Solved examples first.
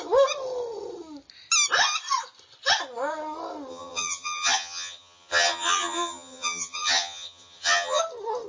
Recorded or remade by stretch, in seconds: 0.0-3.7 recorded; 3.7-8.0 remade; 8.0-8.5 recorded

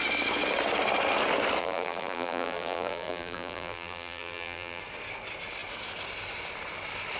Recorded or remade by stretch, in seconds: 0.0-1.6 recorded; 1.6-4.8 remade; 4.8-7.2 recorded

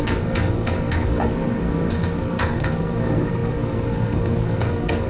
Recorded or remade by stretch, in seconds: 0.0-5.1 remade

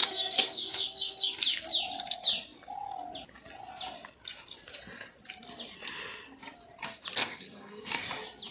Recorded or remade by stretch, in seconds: 0.0-1.3 remade; 1.3-7.2 recorded; 7.2-8.0 remade; 8.0-8.5 recorded

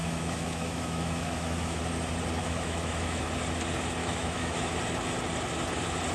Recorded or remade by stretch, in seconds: 0.0-1.8 remade; 1.8-2.4 recorded; 2.4-3.2 remade; 3.2-4.0 recorded; 4.0-4.7 remade; 4.7-6.1 recorded

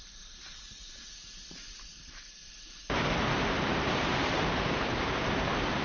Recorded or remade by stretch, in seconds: 0.0-5.8 remade